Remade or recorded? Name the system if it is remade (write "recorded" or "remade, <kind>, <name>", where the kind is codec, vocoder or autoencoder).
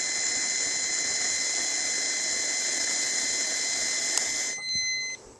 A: recorded